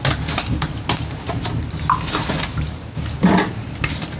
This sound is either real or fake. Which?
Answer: real